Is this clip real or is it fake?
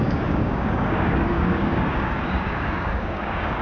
fake